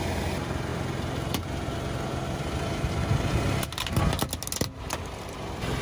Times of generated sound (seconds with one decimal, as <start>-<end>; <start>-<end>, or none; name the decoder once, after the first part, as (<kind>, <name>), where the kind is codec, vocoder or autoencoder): none